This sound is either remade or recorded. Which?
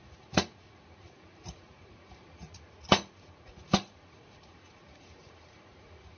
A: remade